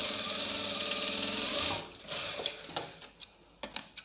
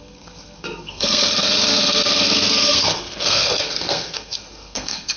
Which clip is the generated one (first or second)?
second